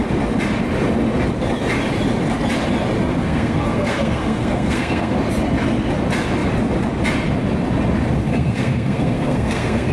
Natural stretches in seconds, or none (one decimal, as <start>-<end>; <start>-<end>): 0.0-3.1; 5.2-8.3